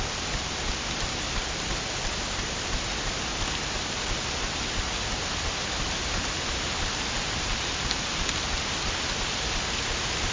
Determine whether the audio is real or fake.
real